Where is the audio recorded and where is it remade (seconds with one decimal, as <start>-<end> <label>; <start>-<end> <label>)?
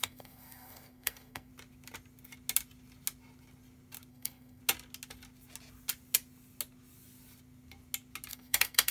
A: 0.0-1.5 remade; 1.5-4.1 recorded; 4.1-4.6 remade; 4.6-8.3 recorded; 8.3-8.9 remade